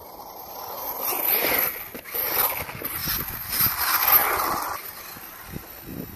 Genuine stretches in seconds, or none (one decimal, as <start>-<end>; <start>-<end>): 0.0-6.2